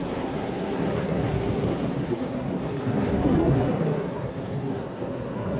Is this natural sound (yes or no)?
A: no